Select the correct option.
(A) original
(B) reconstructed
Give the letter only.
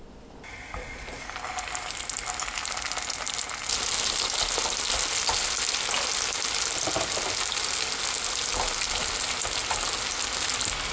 A